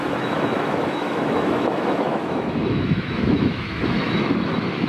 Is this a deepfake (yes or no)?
yes